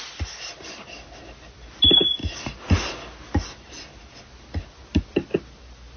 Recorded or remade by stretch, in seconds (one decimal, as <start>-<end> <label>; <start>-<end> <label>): 0.0-6.0 recorded